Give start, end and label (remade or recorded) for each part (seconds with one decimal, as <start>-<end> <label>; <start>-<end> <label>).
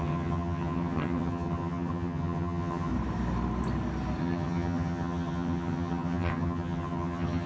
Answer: 0.0-2.9 remade; 2.9-4.2 recorded; 4.2-7.5 remade